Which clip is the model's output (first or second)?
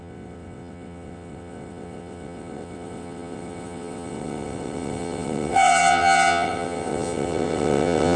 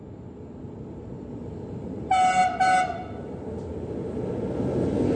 first